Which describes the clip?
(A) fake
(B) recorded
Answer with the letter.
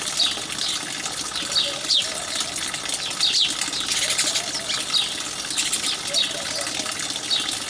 B